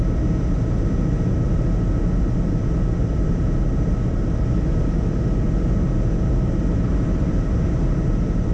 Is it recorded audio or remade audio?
recorded